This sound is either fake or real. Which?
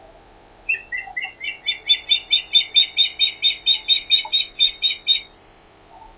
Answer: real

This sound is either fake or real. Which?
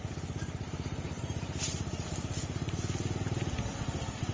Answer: real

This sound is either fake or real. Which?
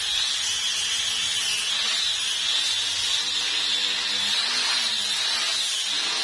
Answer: real